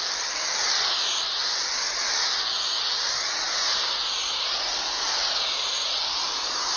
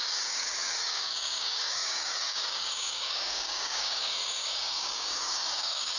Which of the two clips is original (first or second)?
first